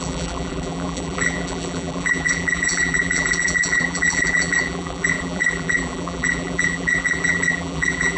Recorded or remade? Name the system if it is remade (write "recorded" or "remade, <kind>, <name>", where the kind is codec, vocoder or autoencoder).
remade, vocoder, BigVGAN v2